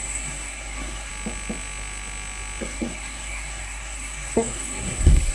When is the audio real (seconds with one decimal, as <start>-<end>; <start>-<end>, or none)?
1.1-2.6